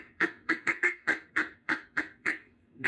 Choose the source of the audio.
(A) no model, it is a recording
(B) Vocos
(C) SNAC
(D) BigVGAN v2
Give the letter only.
C